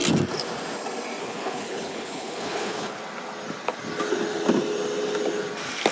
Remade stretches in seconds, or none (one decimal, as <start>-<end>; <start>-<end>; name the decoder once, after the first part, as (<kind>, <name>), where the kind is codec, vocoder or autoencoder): 1.2-3.0 (codec, HILCodec)